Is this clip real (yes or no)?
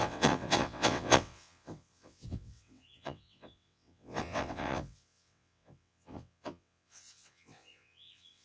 no